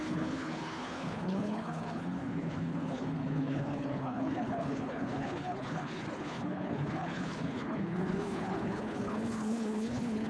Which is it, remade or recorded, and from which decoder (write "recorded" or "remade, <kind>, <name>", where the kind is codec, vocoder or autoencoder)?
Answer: remade, codec, HILCodec